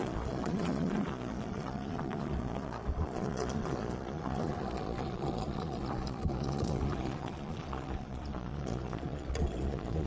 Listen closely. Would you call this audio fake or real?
fake